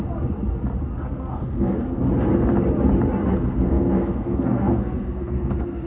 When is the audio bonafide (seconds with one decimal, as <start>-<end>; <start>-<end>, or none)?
0.0-0.9; 2.0-3.4